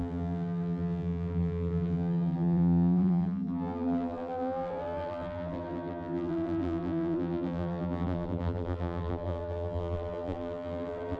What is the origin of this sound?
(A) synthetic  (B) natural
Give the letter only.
A